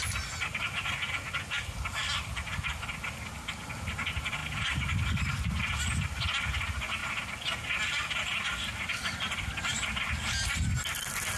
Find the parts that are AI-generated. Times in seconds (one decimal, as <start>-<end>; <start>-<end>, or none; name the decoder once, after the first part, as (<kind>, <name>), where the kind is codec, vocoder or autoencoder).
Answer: none